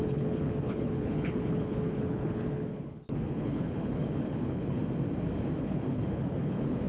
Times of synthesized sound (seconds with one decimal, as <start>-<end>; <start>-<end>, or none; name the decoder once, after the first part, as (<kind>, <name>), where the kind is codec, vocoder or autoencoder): 0.0-4.8 (codec, HILCodec); 5.6-6.9

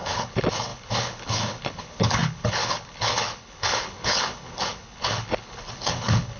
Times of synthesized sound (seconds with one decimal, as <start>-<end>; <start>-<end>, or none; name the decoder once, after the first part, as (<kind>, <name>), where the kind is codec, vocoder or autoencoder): 0.0-6.4 (codec, HILCodec)

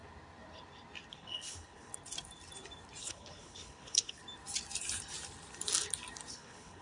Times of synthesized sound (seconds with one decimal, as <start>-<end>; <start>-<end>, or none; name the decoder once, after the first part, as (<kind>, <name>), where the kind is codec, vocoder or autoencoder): 1.1-1.9 (codec, HILCodec); 3.0-4.2; 6.3-6.8

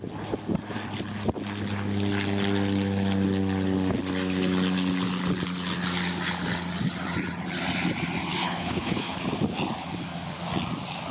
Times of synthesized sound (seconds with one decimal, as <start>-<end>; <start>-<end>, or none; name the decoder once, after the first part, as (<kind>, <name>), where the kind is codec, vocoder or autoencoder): 8.4-9.2 (codec, HILCodec)

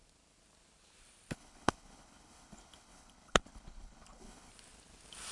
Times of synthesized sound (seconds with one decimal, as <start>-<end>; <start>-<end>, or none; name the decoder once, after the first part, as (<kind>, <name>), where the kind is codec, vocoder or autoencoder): 1.3-4.5 (codec, HILCodec)

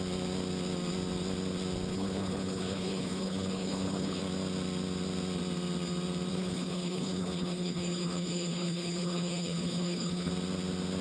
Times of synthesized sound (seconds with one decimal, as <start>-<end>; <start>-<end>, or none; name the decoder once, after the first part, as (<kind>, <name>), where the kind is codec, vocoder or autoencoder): 1.9-4.2 (codec, HILCodec); 6.3-10.3

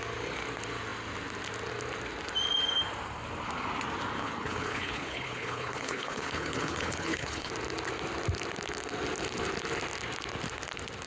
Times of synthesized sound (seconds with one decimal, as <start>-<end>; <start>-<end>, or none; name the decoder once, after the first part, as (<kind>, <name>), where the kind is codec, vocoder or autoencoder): 4.2-7.5 (codec, HILCodec)